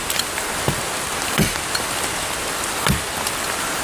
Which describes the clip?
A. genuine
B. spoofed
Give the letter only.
B